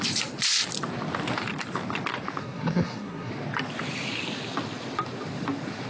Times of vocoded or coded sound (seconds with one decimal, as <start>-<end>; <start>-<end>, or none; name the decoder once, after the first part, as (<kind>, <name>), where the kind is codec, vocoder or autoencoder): 2.4-3.3 (codec, SNAC)